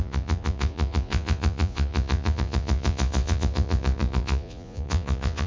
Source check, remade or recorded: remade